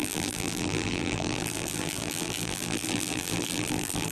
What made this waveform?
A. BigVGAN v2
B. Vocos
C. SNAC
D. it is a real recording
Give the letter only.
A